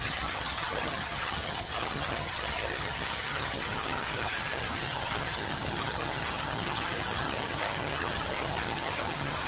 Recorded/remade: remade